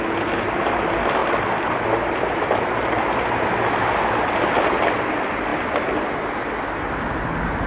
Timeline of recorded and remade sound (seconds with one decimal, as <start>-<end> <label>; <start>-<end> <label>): 0.0-7.7 recorded